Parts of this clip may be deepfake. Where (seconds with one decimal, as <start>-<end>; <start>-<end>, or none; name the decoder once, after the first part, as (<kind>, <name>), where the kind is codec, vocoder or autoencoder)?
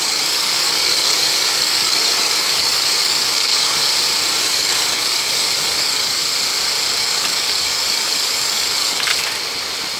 0.0-3.8 (codec, DAC); 4.4-6.2; 7.0-9.1